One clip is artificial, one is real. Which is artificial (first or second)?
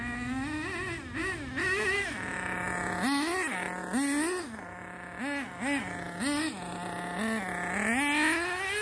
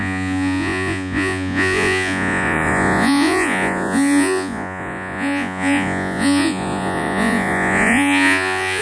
second